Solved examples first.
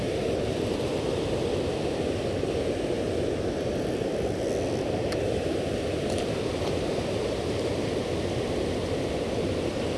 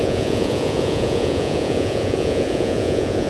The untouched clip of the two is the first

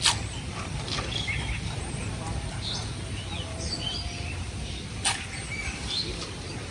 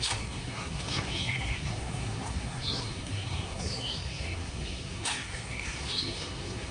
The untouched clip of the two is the first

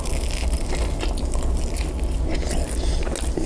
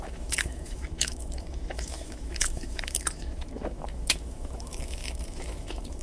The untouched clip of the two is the first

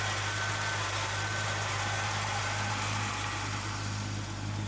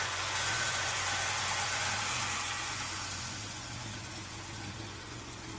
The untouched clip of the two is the first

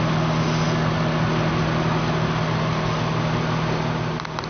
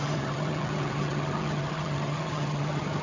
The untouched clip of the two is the first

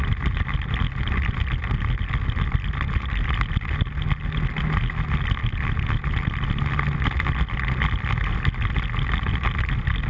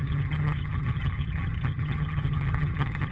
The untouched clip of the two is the first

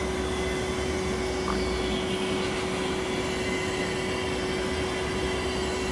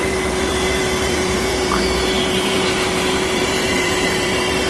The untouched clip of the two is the first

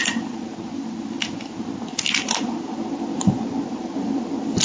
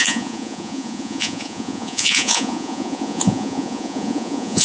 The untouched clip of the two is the first